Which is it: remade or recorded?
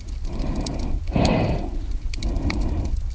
recorded